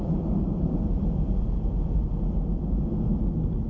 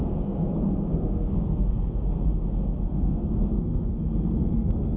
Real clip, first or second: first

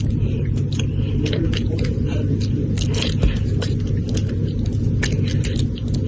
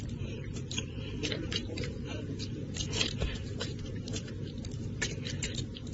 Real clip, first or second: first